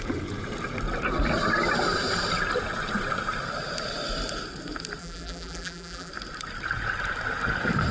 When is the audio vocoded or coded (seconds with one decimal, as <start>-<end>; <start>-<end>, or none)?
5.0-6.1